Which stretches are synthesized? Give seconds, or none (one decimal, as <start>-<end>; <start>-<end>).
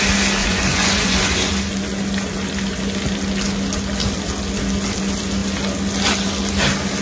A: 0.4-1.5